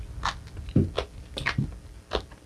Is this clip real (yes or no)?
yes